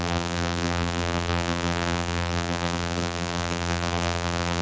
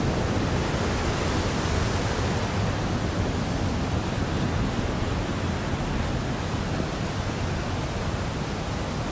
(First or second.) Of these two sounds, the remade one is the first